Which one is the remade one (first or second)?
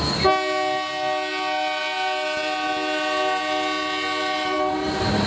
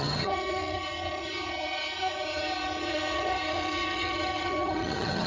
second